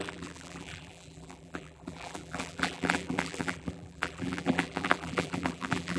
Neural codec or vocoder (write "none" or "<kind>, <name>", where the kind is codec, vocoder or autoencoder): vocoder, BigVGAN v2